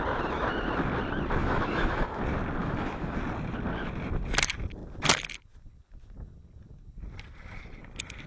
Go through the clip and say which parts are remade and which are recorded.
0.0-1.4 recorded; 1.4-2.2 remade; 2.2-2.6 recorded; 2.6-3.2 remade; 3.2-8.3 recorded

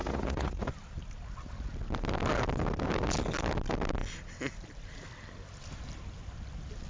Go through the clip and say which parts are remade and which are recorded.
0.0-0.7 remade; 0.7-6.9 recorded

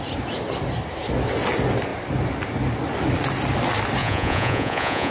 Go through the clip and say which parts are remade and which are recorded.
0.0-4.0 recorded; 4.0-5.1 remade

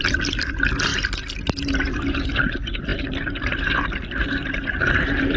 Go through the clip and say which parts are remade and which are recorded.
0.0-5.4 recorded

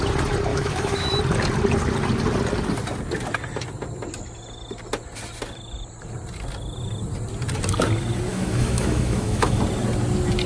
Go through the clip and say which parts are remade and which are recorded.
0.0-0.5 recorded; 0.5-1.2 remade; 1.2-8.3 recorded; 8.3-9.6 remade; 9.6-10.5 recorded

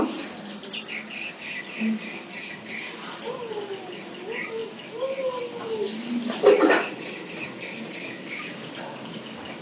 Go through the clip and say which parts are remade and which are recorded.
0.0-9.6 recorded